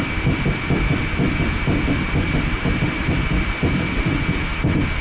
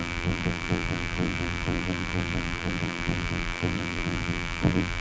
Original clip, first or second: first